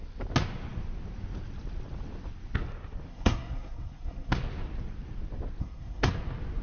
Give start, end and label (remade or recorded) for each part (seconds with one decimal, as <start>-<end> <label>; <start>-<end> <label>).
0.0-3.1 recorded; 3.1-4.3 remade; 4.3-5.6 recorded; 5.6-6.1 remade; 6.1-6.6 recorded